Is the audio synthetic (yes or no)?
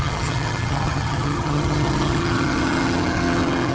yes